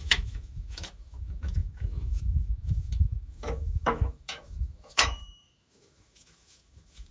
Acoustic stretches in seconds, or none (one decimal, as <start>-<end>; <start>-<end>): none